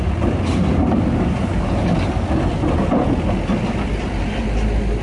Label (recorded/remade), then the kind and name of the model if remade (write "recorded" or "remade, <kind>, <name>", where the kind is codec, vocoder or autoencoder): recorded